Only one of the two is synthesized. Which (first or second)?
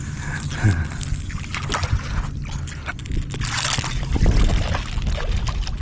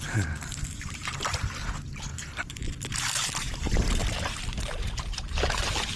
second